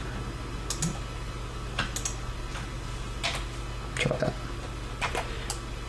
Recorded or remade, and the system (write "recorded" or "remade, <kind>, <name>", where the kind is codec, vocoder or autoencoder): recorded